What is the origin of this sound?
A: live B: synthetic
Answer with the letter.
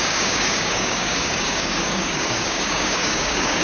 B